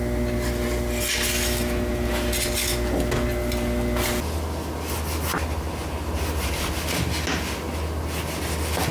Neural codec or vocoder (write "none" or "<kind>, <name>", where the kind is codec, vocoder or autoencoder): none